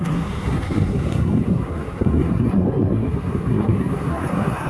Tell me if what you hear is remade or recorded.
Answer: remade